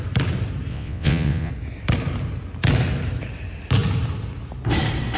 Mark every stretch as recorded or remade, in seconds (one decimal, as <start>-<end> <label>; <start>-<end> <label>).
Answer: 0.0-0.7 recorded; 0.7-1.5 remade; 1.5-5.2 recorded

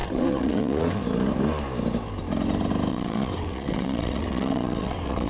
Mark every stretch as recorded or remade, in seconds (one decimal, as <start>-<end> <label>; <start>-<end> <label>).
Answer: 0.0-1.0 remade; 1.0-2.9 recorded; 2.9-5.3 remade